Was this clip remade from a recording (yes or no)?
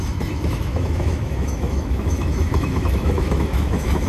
yes